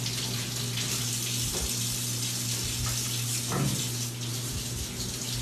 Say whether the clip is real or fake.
real